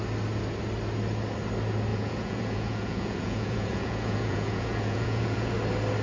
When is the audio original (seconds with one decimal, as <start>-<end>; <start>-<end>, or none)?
0.0-1.9; 5.5-6.0